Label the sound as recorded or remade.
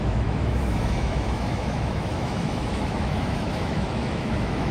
remade